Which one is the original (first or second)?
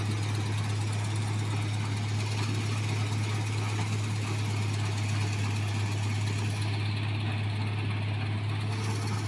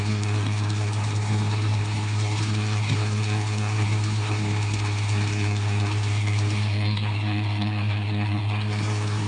first